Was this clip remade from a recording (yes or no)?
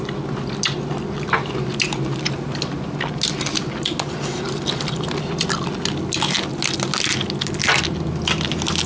no